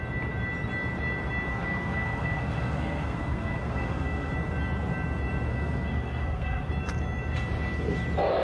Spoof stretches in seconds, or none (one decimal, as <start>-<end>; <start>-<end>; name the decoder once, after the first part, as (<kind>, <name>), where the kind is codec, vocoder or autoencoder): 1.5-4.3 (codec, SNAC); 5.5-6.7